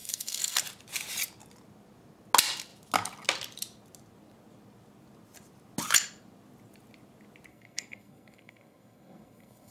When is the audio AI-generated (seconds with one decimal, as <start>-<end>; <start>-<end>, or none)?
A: 0.0-0.6; 7.5-9.7